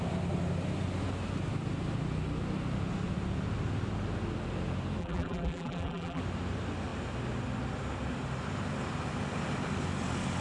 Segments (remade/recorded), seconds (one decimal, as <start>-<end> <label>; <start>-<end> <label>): 0.0-5.0 recorded; 5.0-6.2 remade; 6.2-10.4 recorded